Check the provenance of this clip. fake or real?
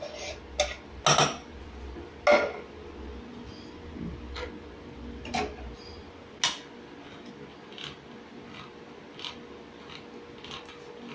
real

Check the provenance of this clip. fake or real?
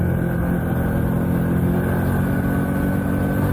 real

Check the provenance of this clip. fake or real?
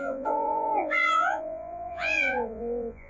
fake